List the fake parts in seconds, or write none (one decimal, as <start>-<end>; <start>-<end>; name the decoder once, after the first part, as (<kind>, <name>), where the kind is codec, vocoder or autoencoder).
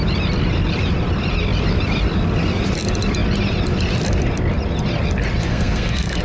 5.4-6.2 (codec, SNAC)